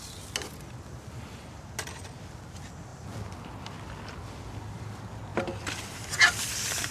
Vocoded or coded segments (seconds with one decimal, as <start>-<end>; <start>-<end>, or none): none